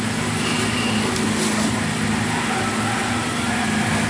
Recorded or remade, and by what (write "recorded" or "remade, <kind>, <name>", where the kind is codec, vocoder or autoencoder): recorded